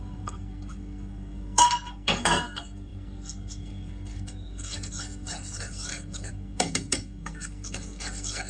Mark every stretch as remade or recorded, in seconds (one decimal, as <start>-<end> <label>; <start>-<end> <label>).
0.0-8.5 remade